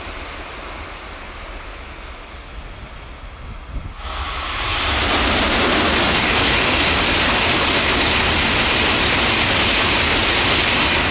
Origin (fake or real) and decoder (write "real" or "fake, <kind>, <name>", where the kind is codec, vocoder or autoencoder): real